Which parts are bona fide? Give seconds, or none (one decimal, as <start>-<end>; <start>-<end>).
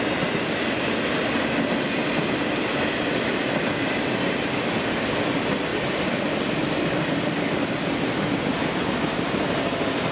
0.0-10.1